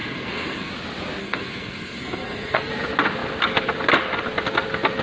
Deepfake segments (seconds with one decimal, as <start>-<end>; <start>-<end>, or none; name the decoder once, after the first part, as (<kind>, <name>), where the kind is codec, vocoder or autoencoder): 0.0-0.7 (codec, SNAC); 1.2-2.7